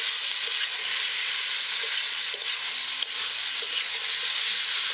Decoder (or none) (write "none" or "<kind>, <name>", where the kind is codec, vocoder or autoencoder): none